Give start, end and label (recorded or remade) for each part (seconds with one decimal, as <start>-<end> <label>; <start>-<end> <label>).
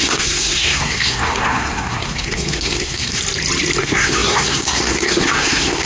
0.0-3.2 remade; 3.2-3.8 recorded; 3.8-5.9 remade